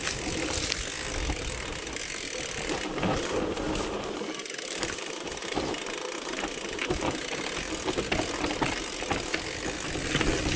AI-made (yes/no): no